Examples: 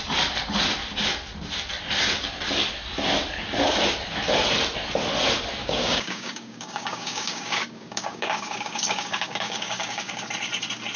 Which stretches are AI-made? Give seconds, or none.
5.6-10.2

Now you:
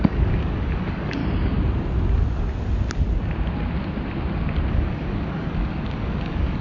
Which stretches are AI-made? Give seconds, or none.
0.0-1.2; 4.7-6.6

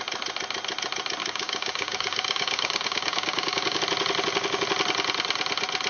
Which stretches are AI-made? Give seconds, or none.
1.2-3.8

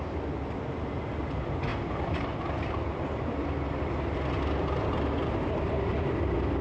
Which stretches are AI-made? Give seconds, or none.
none

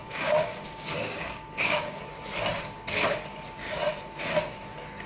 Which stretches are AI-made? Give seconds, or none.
0.0-2.0